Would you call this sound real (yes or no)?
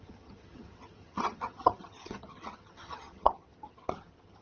no